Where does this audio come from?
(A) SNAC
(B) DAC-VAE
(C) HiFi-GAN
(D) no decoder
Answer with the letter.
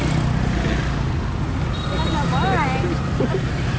D